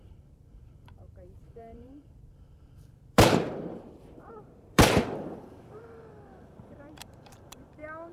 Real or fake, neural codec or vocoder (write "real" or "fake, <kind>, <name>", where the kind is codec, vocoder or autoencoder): fake, vocoder, BigVGAN v2